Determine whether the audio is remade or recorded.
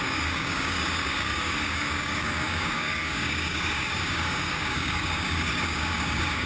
remade